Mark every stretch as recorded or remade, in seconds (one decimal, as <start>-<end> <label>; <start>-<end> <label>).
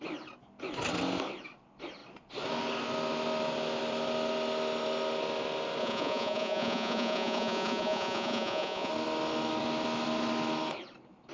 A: 0.0-5.8 recorded; 5.8-8.9 remade; 8.9-11.3 recorded